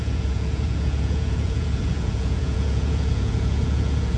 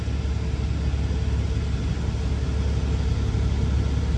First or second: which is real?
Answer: second